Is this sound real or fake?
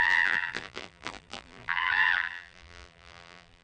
fake